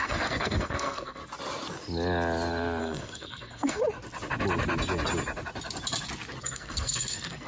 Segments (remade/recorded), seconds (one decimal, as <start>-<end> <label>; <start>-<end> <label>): 0.0-1.2 remade; 1.2-2.8 recorded; 2.8-3.8 remade; 3.8-6.4 recorded; 6.4-7.5 remade